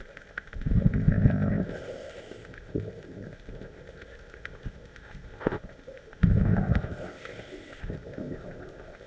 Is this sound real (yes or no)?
no